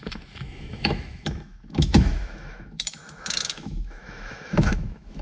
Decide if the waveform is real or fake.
fake